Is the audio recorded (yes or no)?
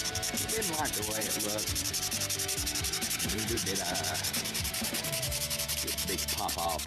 no